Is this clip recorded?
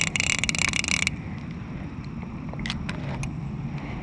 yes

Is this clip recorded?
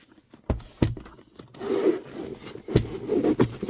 yes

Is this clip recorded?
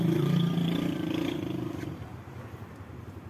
no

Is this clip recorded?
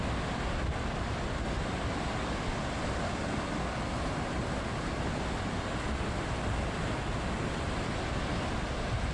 yes